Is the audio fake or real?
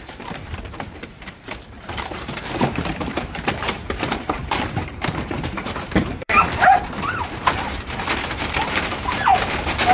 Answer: fake